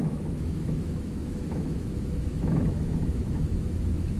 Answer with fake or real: fake